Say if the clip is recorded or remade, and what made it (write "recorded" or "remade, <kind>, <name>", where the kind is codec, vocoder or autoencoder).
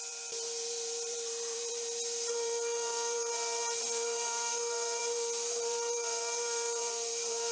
remade, vocoder, BigVGAN v2